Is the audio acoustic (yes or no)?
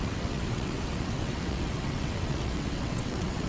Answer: no